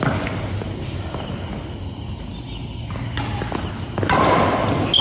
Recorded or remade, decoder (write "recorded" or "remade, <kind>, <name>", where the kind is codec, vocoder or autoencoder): recorded